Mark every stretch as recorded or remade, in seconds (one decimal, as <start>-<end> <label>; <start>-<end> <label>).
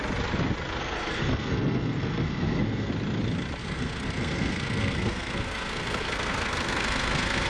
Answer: 0.0-0.8 recorded; 0.8-2.9 remade; 2.9-3.6 recorded; 3.6-7.5 remade